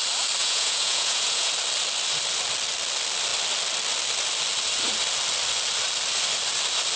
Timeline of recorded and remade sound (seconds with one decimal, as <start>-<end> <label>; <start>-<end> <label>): 0.0-0.4 recorded; 0.4-1.5 remade; 1.5-7.0 recorded